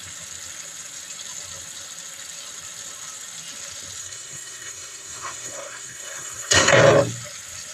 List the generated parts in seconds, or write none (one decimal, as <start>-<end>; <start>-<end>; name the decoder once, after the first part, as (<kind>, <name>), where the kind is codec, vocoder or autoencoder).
4.0-6.8 (codec, SNAC)